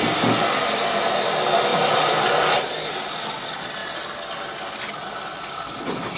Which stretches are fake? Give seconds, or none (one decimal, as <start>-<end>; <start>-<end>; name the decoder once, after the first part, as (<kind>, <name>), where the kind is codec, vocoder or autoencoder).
none